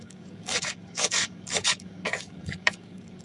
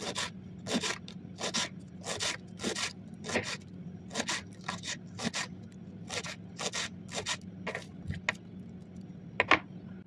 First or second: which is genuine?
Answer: second